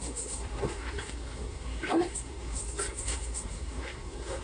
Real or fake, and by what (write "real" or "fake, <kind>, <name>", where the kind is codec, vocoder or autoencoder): fake, codec, SNAC